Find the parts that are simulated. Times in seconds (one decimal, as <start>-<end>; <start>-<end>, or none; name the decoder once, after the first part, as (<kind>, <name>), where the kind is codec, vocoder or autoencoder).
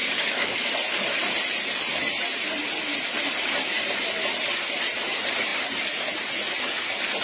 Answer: 0.0-0.7 (codec, DAC)